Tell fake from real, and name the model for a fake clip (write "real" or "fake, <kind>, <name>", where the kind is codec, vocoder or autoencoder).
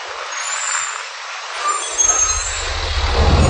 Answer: real